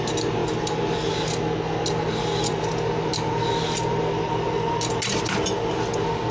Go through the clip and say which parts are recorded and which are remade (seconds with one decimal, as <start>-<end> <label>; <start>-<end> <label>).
0.0-6.3 recorded